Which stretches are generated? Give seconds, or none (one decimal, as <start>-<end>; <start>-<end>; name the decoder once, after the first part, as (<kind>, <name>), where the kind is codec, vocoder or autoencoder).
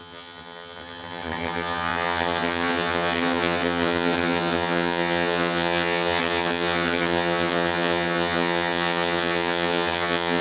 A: 0.0-10.4 (vocoder, HiFi-GAN)